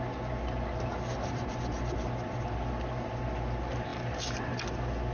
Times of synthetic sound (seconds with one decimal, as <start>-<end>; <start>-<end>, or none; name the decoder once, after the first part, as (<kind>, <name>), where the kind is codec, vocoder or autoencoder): none